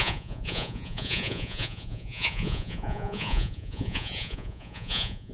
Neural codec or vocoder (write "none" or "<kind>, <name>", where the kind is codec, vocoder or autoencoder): vocoder, Vocos